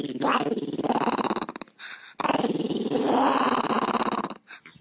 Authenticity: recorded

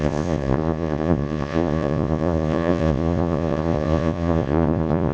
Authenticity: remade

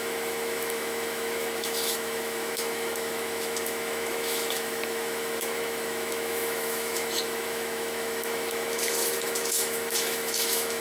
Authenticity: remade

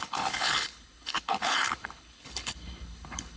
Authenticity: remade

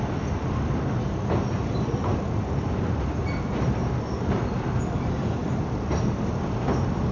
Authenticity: recorded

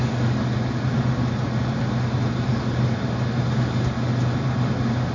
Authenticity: recorded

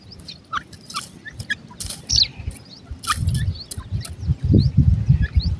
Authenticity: recorded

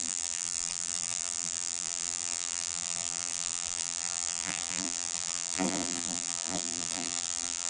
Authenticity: remade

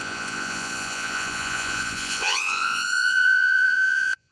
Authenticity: remade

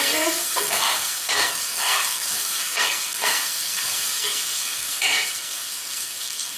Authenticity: remade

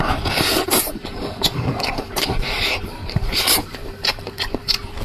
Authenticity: remade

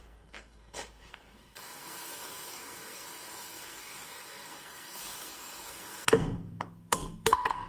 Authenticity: remade